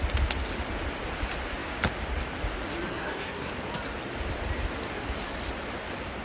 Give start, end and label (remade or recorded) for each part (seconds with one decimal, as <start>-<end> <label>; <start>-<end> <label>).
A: 0.0-2.9 recorded; 2.9-3.5 remade; 3.5-6.2 recorded